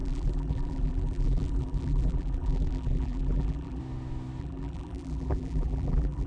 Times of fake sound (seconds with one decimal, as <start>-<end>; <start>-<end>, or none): 0.0-3.8; 4.4-6.3